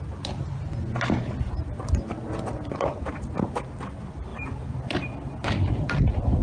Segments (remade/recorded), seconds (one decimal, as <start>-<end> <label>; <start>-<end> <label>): 0.0-6.4 recorded